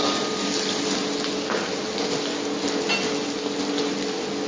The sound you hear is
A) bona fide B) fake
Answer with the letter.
A